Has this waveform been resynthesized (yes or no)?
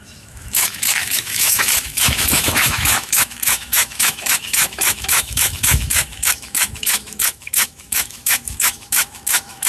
yes